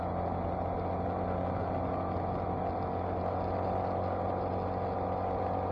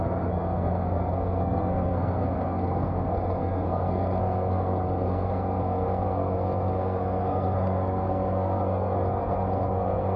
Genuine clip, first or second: first